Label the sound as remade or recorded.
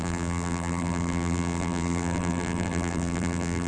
remade